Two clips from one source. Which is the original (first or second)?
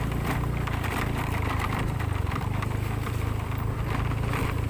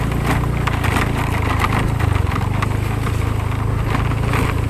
second